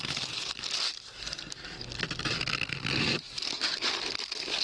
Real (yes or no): yes